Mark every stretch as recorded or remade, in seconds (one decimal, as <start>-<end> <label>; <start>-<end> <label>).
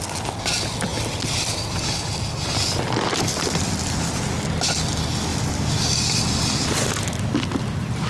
0.0-5.3 recorded; 5.3-8.1 remade